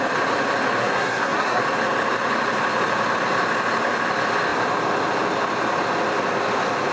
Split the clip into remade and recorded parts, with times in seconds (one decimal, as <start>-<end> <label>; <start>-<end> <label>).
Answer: 0.0-0.8 recorded; 0.8-1.6 remade; 1.6-6.9 recorded